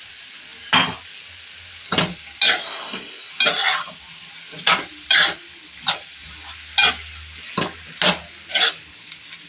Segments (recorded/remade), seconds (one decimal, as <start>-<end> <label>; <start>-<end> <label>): 0.0-2.6 recorded; 2.6-3.3 remade; 3.3-9.5 recorded